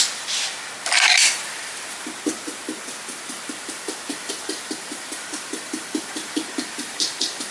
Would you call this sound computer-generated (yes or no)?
no